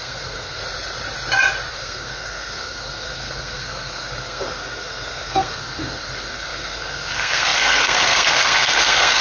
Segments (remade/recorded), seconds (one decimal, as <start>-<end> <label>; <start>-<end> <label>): 0.0-0.6 remade; 0.6-1.7 recorded; 1.7-9.2 remade